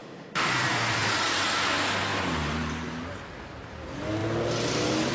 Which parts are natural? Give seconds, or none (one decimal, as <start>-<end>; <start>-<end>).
0.5-5.1